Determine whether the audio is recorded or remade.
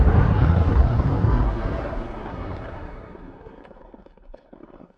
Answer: remade